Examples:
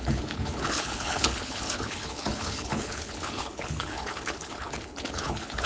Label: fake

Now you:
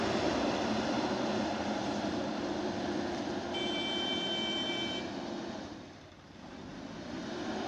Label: fake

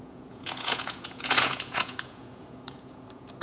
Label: fake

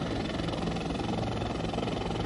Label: fake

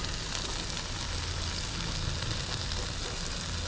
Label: real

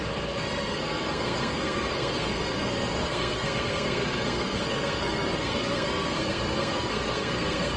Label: fake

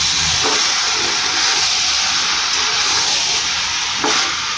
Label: real